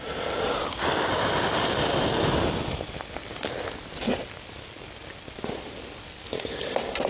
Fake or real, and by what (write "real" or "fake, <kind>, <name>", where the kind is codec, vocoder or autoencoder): real